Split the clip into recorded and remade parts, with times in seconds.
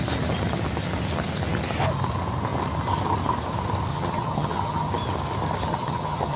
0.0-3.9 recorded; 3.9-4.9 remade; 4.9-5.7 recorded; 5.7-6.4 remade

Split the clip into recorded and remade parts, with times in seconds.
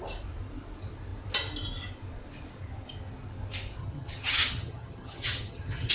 0.0-3.8 recorded; 3.8-5.9 remade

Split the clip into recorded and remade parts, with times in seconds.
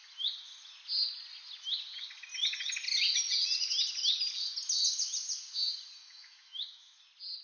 0.0-6.0 recorded; 6.0-7.0 remade; 7.0-7.4 recorded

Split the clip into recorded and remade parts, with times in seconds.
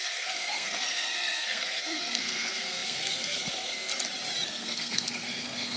0.0-3.9 remade; 3.9-4.5 recorded; 4.5-5.8 remade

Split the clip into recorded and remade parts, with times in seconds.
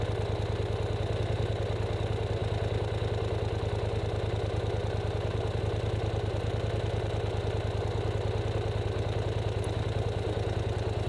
0.0-11.1 recorded